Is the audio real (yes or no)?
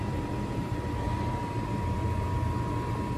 no